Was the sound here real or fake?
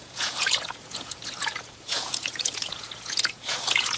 fake